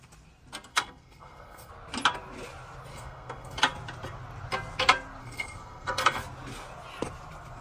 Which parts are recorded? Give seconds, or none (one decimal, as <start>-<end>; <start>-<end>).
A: 0.0-0.7; 1.7-2.9; 3.6-5.2; 6.2-7.6